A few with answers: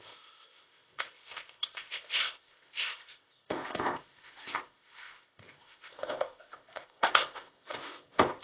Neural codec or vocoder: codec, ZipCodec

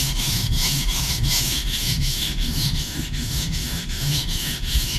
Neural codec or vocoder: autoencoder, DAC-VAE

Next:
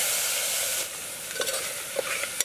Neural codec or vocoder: none